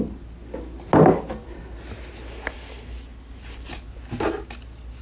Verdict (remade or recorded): recorded